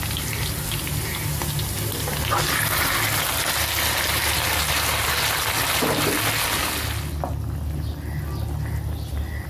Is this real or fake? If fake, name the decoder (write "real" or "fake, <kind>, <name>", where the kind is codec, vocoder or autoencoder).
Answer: real